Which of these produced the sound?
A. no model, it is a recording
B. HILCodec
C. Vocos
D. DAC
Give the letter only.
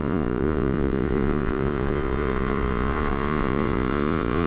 C